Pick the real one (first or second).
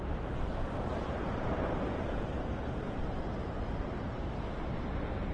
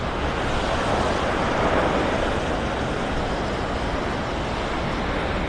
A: second